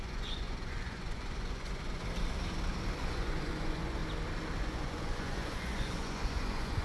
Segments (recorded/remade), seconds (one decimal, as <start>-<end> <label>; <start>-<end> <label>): 0.0-2.0 remade; 2.0-3.0 recorded; 3.0-4.0 remade; 4.0-4.6 recorded; 4.6-6.8 remade